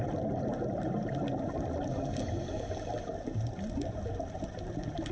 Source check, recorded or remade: recorded